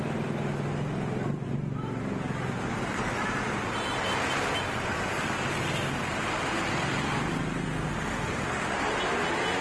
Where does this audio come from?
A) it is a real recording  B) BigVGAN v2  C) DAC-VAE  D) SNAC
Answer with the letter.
A